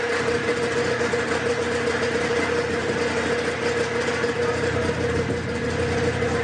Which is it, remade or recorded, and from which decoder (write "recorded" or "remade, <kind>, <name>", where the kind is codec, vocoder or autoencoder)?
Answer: recorded